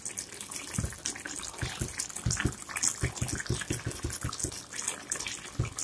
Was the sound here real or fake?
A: real